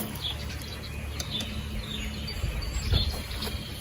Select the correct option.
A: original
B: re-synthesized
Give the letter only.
A